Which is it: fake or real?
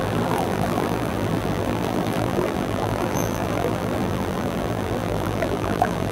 fake